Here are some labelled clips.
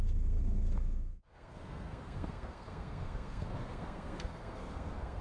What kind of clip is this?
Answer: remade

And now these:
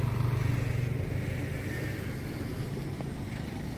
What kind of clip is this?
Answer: recorded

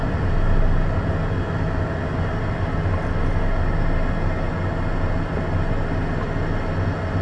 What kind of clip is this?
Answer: recorded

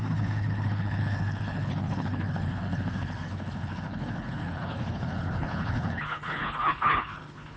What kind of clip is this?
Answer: remade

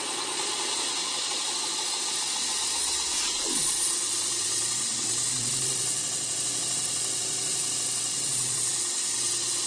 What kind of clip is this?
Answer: remade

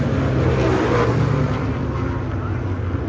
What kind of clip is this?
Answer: recorded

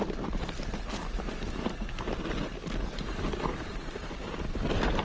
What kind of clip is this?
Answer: recorded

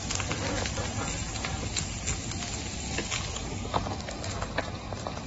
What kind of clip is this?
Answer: recorded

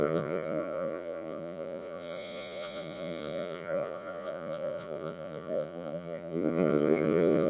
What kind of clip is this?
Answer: remade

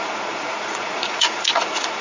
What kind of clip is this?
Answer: remade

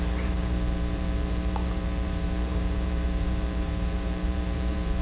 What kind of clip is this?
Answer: remade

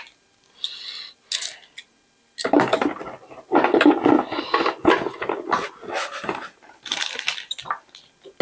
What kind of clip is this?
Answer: recorded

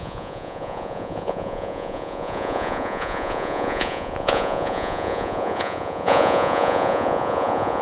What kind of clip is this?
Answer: remade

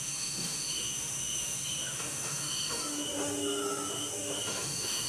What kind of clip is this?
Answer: remade